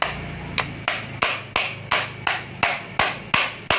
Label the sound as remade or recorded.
recorded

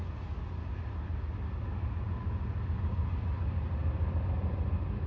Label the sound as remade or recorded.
recorded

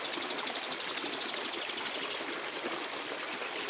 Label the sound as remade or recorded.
recorded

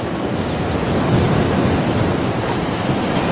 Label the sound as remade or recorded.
recorded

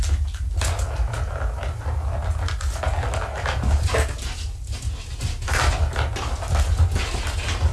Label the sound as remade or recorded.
recorded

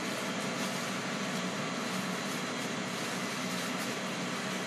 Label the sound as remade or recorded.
recorded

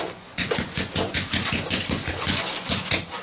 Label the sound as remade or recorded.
remade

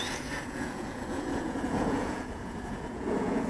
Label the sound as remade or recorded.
remade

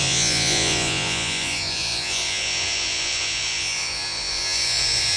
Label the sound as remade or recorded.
remade